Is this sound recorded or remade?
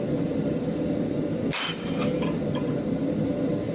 recorded